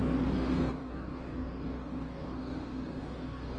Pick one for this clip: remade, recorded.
remade